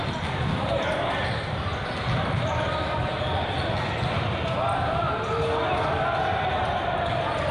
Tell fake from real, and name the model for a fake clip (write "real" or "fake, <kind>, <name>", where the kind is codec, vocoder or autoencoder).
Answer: real